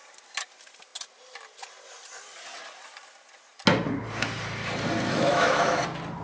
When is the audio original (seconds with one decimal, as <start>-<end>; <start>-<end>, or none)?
0.0-5.1; 5.8-6.2